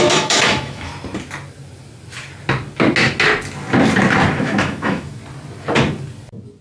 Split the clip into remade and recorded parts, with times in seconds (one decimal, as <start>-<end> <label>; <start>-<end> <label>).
0.0-0.9 remade; 0.9-4.4 recorded; 4.4-5.2 remade; 5.2-6.6 recorded